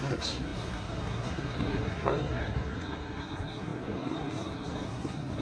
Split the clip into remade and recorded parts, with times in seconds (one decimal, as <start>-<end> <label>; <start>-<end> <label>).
0.0-5.4 remade